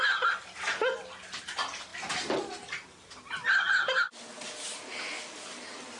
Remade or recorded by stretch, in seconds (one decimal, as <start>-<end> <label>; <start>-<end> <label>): 0.0-6.0 recorded